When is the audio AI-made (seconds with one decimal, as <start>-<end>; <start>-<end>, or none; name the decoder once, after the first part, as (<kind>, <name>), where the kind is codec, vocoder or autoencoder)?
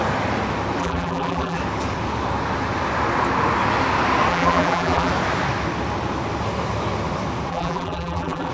0.8-1.6 (vocoder, BigVGAN v2); 4.3-5.1; 7.5-8.5